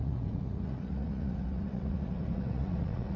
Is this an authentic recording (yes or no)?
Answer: no